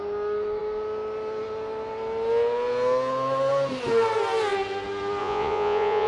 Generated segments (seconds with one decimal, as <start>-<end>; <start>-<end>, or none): 5.2-6.1